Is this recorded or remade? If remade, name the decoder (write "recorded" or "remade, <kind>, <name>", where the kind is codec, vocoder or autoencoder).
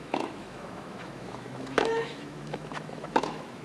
remade, autoencoder, DAC-VAE